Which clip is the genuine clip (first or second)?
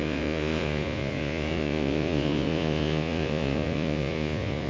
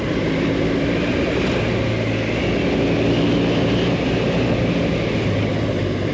second